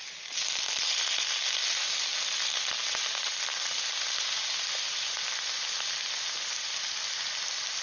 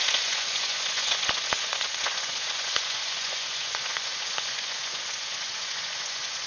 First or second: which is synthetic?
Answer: second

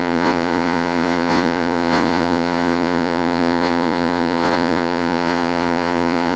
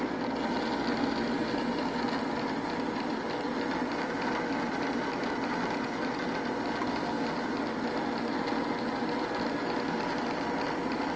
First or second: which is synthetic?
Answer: first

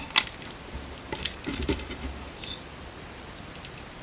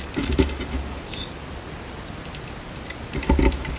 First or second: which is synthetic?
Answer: first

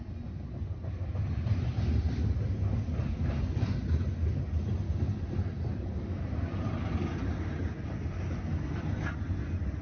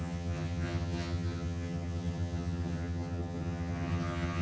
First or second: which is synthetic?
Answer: second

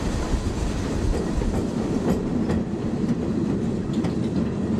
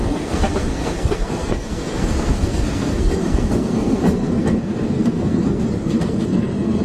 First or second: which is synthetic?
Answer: second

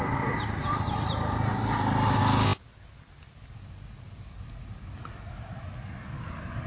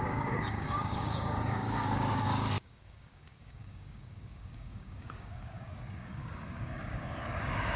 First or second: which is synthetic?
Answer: second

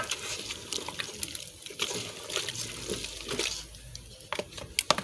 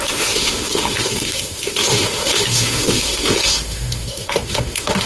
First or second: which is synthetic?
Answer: second